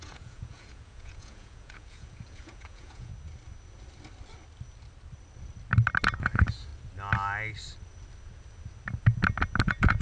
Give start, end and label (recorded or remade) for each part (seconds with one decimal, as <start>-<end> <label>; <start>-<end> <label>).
0.0-3.1 remade; 3.1-6.2 recorded; 6.2-6.7 remade; 6.7-9.6 recorded; 9.6-10.0 remade